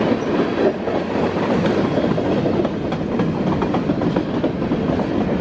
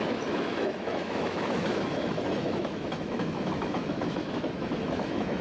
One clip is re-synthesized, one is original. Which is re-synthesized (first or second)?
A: second